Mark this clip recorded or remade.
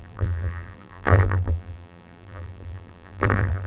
remade